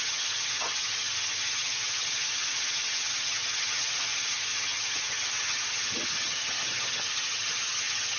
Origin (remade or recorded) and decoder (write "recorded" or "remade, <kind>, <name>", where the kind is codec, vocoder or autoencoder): remade, vocoder, HiFi-GAN